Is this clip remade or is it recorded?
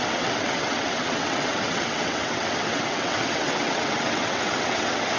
remade